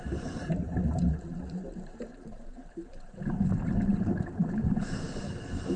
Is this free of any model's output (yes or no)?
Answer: no